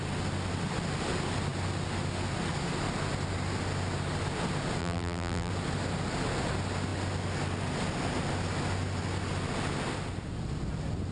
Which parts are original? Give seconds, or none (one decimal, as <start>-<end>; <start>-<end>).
0.0-4.8; 5.5-11.1